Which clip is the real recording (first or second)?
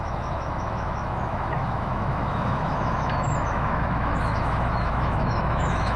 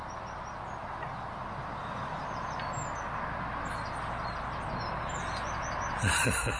second